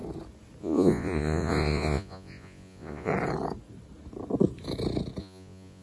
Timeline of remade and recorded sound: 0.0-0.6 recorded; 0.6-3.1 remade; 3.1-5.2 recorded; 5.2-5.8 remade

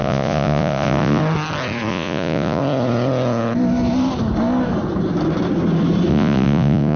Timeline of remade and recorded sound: 0.0-1.2 remade; 1.2-1.9 recorded; 1.9-2.6 remade; 2.6-6.1 recorded; 6.1-7.0 remade

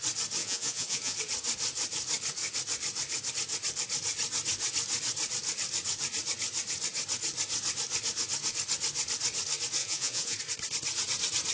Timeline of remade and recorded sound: 0.0-0.4 recorded; 0.4-1.2 remade; 1.2-9.8 recorded; 9.8-10.4 remade; 10.4-11.5 recorded

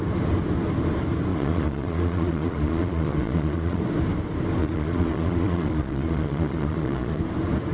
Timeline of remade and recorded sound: 0.0-1.3 recorded; 1.3-3.8 remade; 3.8-4.6 recorded; 4.6-7.2 remade; 7.2-7.7 recorded

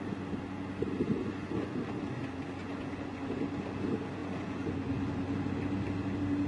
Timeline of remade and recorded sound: 0.0-1.1 recorded; 1.1-1.8 remade; 1.8-2.6 recorded; 2.6-3.2 remade; 3.2-4.2 recorded; 4.2-4.7 remade; 4.7-6.5 recorded

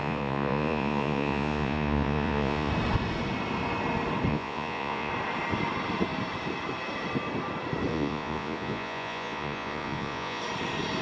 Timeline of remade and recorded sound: 0.0-2.7 remade; 2.7-4.3 recorded; 4.3-5.1 remade; 5.1-7.9 recorded; 7.9-10.4 remade; 10.4-11.0 recorded